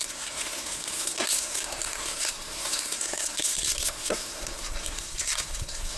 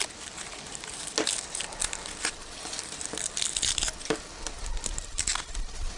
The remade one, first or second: first